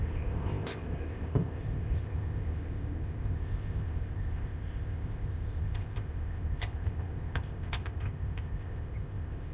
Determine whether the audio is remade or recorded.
remade